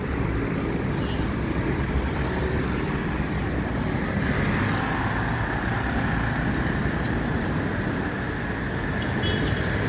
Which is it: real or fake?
real